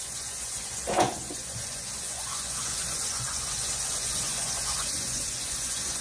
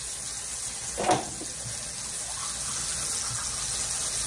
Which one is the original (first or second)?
second